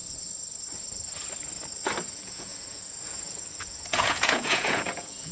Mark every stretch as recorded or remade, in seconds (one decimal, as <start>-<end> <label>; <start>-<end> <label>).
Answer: 0.0-2.1 recorded; 2.1-5.3 remade